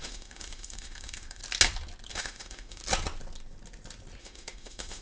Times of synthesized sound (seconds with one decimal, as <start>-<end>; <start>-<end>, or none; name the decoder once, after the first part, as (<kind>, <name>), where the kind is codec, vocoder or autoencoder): 0.0-1.4 (autoencoder, DAC-VAE); 2.1-2.8; 4.2-5.0